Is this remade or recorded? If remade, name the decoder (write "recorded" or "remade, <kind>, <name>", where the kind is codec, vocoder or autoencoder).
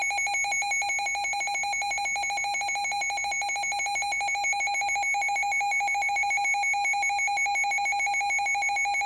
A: recorded